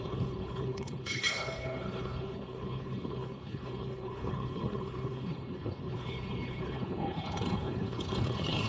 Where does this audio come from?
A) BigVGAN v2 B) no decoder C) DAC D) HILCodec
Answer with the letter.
D